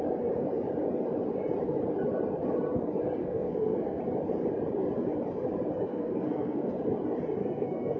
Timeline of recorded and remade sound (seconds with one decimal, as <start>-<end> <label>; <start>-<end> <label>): 0.0-3.2 recorded; 3.2-4.0 remade; 4.0-5.9 recorded; 5.9-6.7 remade; 6.7-7.4 recorded; 7.4-8.0 remade